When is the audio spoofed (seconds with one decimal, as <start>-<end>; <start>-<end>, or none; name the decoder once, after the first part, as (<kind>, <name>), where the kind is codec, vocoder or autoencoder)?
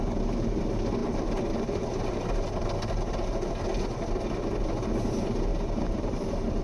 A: 1.0-3.5 (vocoder, BigVGAN v2); 5.5-6.6